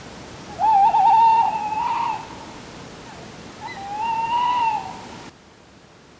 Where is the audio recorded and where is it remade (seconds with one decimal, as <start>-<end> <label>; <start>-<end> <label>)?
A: 0.0-6.2 recorded